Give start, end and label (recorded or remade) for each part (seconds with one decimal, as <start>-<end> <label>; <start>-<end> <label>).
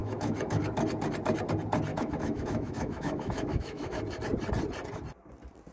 0.0-0.6 remade; 0.6-1.9 recorded; 1.9-4.0 remade; 4.0-5.7 recorded